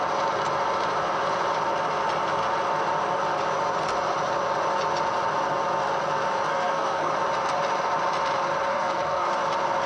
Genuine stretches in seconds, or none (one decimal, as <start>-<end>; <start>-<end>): 0.0-6.5; 7.1-8.7; 9.3-9.9